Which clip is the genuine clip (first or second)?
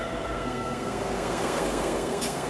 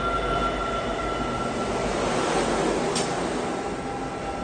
second